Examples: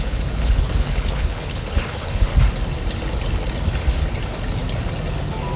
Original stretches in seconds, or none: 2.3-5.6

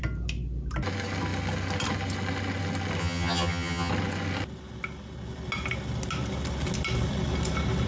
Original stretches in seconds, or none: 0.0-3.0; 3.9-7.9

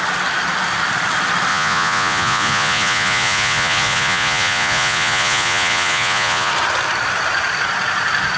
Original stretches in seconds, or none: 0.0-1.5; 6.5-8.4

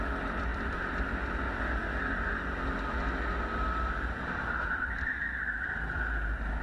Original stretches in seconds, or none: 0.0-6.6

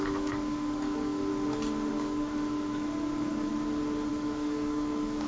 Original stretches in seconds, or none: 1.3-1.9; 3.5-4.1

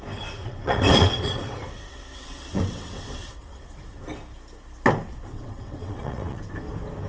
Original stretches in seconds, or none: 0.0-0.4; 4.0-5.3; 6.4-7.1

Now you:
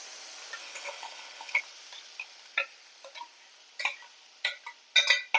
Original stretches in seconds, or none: 0.0-0.6; 1.6-5.4

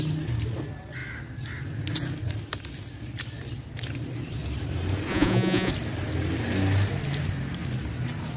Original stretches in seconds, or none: 0.0-5.1; 5.7-8.4